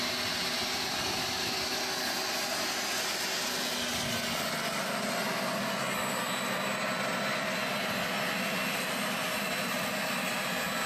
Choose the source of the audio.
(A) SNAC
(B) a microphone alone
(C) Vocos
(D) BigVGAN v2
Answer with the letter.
B